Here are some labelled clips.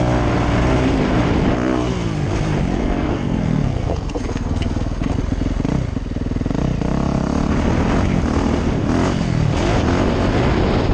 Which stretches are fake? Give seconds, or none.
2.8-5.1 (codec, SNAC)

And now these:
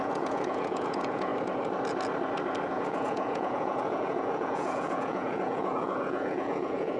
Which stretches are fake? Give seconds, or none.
0.0-1.3 (vocoder, Vocos); 2.7-7.0

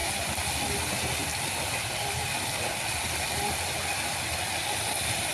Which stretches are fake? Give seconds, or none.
1.3-2.1 (vocoder, BigVGAN v2)

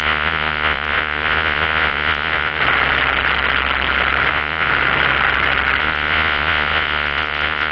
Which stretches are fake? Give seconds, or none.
0.0-2.6 (vocoder, Vocos); 4.3-4.7; 5.8-7.7

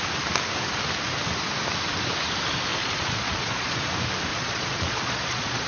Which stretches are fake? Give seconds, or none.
2.7-3.8 (vocoder, Vocos); 4.3-5.7

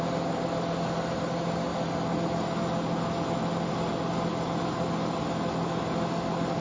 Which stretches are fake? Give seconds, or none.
none